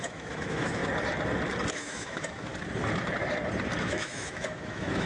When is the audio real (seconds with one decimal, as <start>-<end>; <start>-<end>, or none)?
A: 0.8-1.7; 2.5-3.8